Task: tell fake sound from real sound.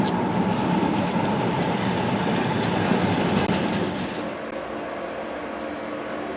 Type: real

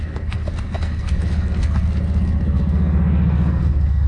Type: fake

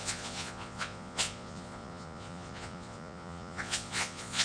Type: fake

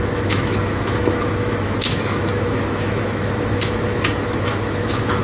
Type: fake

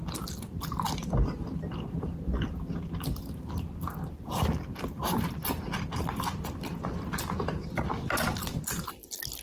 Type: real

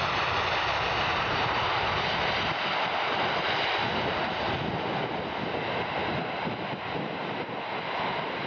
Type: real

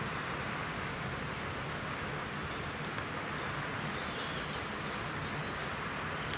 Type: real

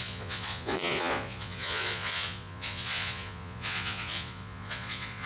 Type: fake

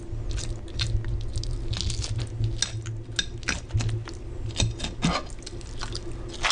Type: real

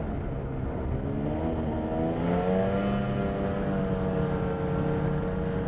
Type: real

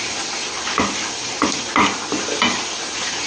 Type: real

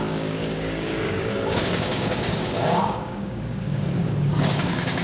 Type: fake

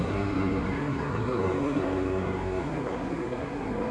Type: fake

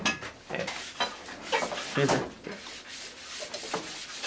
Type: real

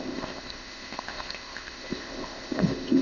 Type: fake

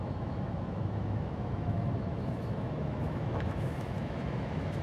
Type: fake